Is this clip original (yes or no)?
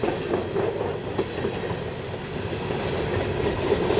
yes